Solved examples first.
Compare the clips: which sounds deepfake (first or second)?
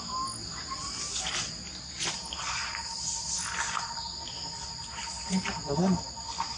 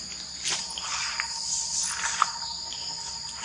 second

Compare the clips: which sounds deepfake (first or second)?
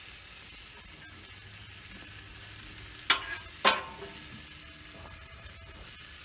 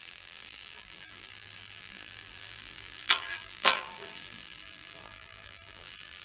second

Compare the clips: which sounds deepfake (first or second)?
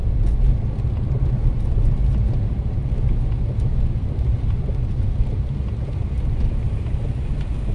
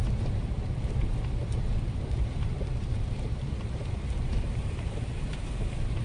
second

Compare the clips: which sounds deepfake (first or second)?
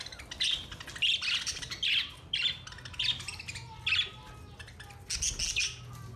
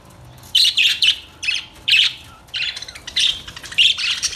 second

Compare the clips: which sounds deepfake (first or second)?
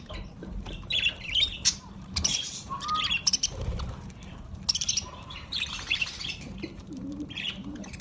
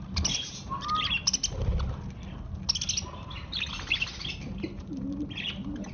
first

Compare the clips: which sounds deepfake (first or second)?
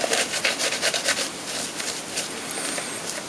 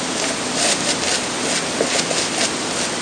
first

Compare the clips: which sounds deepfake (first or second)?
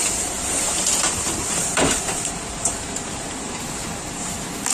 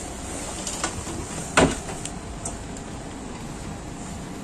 first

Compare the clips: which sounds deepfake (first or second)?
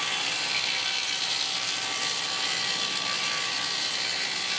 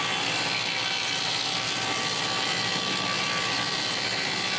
first